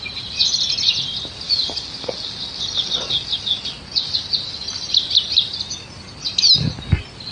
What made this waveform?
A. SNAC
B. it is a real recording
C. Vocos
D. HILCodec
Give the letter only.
B